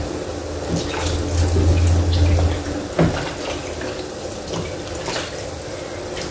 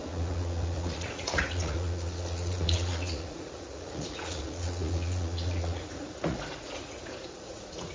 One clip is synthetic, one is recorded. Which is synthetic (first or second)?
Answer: second